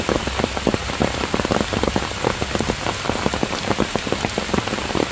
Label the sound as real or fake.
real